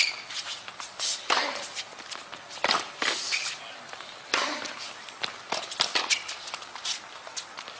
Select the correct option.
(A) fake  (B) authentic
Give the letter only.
B